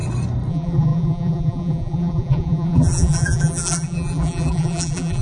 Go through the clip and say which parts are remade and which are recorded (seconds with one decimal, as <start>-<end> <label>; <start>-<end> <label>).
0.0-0.5 recorded; 0.5-5.2 remade